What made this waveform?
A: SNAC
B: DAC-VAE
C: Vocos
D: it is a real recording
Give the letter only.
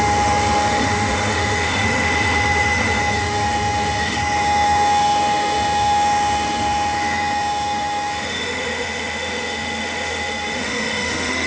B